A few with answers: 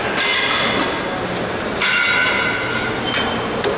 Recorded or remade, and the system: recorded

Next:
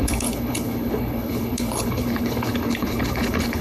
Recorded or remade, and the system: remade, codec, HILCodec